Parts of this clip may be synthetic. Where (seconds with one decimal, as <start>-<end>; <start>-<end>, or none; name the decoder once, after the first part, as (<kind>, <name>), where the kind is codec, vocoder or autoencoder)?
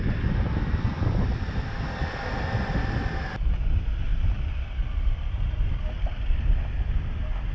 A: none